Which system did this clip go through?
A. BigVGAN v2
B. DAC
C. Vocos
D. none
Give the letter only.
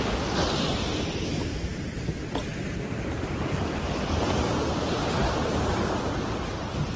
D